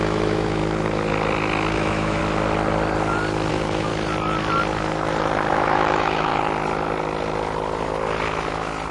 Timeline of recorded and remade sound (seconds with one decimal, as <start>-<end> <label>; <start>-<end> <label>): 0.0-0.6 remade; 0.6-1.7 recorded; 1.7-2.2 remade; 2.2-3.5 recorded; 3.5-3.9 remade; 3.9-5.5 recorded; 5.5-6.3 remade; 6.3-8.9 recorded